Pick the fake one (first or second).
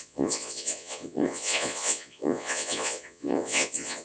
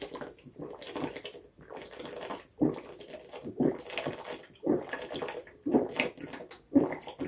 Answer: first